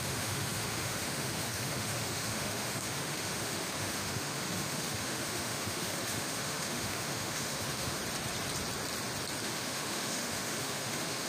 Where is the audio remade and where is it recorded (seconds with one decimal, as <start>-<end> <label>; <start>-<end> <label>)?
0.0-8.0 remade; 8.0-9.4 recorded; 9.4-11.3 remade